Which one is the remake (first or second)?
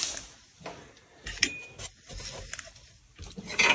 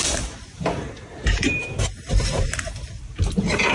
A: second